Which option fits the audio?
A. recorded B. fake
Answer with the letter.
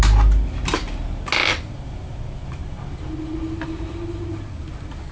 A